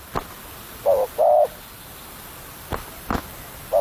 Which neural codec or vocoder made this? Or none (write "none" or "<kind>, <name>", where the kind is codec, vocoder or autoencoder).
none